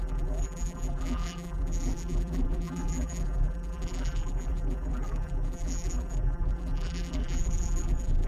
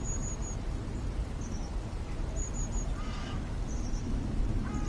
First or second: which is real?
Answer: second